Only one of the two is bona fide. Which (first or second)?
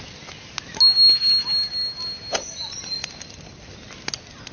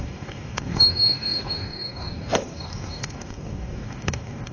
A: first